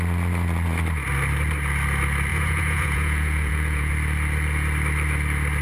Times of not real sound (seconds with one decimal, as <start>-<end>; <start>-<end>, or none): 2.3-3.9